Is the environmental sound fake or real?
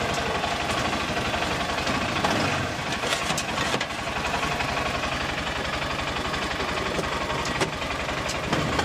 real